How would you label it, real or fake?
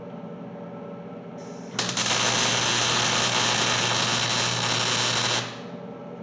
real